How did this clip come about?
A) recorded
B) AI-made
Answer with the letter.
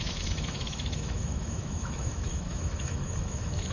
B